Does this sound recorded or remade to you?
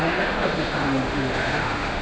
remade